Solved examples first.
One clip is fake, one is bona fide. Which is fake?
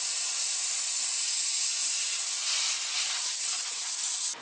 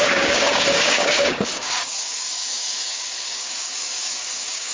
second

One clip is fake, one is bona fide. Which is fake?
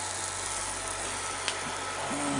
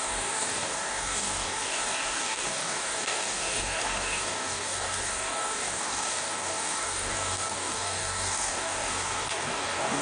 second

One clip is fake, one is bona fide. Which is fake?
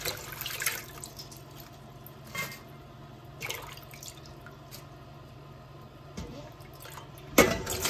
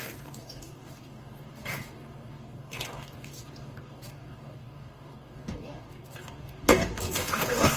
second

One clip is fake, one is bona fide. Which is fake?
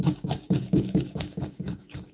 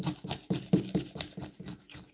first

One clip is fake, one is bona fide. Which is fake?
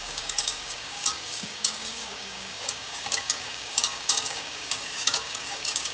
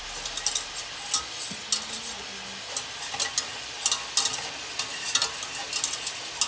first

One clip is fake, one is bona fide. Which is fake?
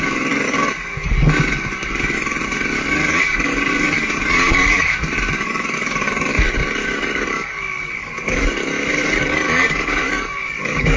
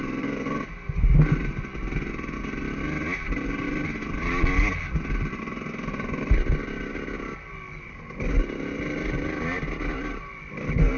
first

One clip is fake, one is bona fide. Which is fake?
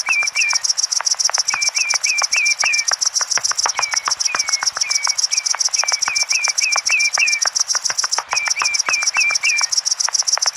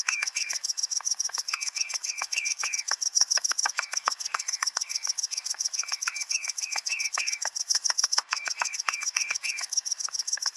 second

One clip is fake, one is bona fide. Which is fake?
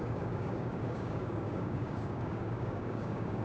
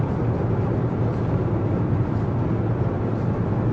first